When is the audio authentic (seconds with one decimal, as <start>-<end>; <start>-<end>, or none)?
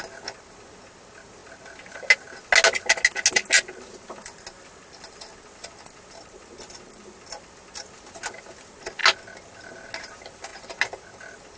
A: 0.0-11.6